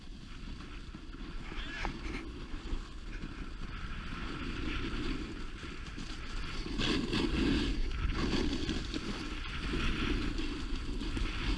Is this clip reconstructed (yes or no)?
no